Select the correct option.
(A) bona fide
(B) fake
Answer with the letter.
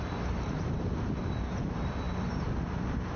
B